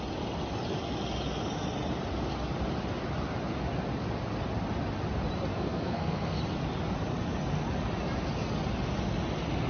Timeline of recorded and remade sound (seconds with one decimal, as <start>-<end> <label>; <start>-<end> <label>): 0.0-5.5 recorded; 5.5-6.4 remade; 6.4-9.7 recorded